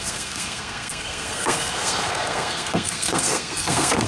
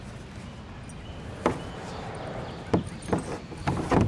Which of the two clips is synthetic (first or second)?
first